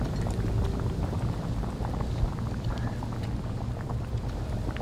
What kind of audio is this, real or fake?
real